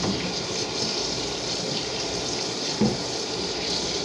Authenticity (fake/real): fake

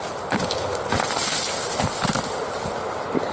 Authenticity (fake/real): real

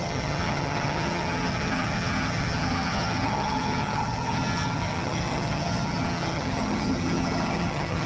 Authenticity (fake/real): fake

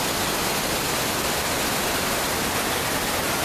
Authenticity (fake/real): real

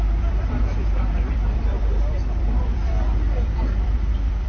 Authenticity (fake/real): fake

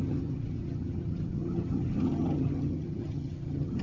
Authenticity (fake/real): fake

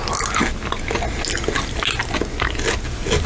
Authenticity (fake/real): real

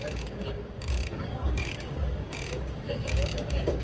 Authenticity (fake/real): fake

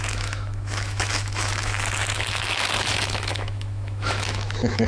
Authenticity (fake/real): fake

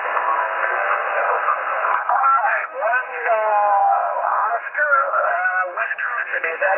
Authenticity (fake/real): fake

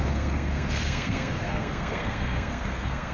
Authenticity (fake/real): fake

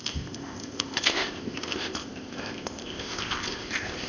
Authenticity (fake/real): fake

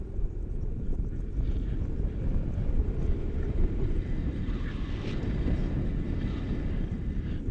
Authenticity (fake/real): fake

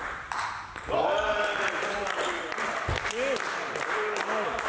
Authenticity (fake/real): real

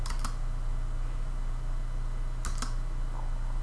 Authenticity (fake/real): real